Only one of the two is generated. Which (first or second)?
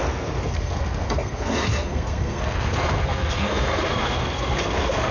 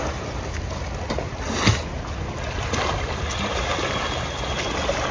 first